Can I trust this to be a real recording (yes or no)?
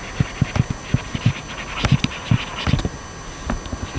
yes